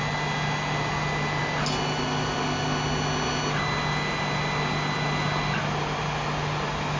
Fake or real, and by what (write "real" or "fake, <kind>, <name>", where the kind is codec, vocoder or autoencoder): real